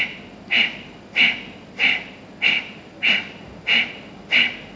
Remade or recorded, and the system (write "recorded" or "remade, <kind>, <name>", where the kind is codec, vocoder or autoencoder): recorded